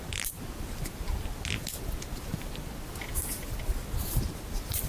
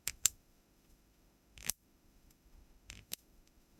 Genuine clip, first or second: first